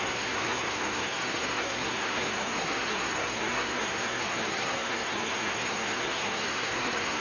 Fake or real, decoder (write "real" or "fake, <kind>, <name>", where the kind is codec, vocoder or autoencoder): fake, codec, SNAC